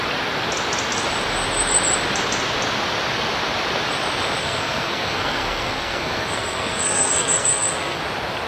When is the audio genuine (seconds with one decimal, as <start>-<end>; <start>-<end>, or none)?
0.0-4.4; 8.0-8.5